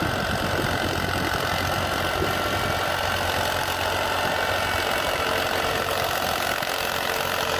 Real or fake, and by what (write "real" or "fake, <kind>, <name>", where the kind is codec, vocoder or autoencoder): real